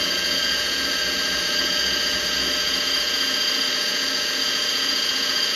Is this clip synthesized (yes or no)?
yes